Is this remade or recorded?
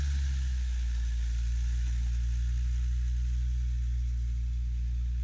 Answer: recorded